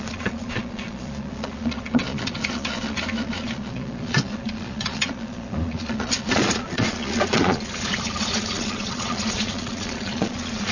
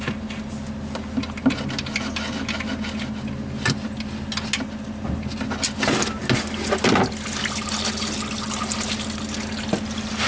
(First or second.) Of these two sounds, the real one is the second